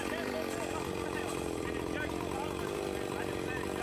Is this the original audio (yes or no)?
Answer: yes